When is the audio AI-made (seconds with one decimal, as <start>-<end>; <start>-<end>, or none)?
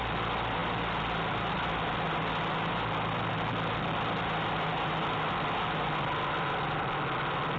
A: none